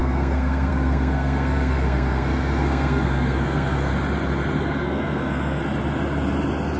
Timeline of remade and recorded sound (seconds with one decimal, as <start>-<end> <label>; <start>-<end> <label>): 0.0-3.9 remade; 3.9-4.6 recorded; 4.6-5.6 remade; 5.6-6.8 recorded